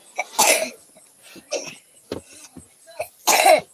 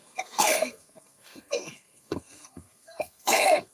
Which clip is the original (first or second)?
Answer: first